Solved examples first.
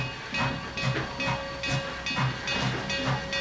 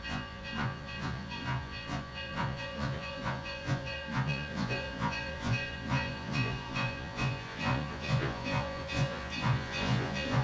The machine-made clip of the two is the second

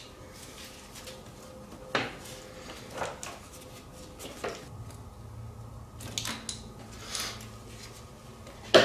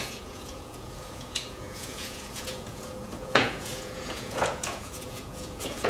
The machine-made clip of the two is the second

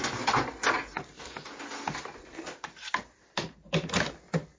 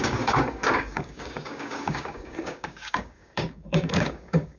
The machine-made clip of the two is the second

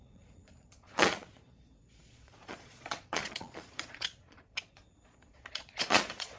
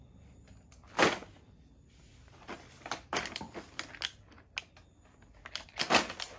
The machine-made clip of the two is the first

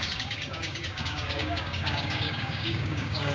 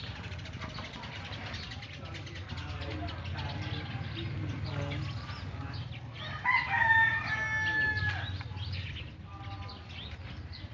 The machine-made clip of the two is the first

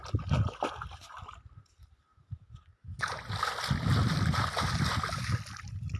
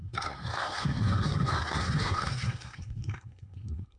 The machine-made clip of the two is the second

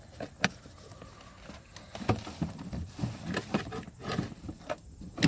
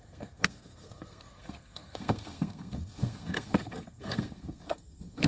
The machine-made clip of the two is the second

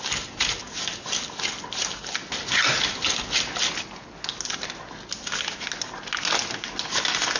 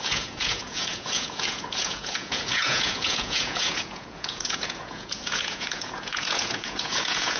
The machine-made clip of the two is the second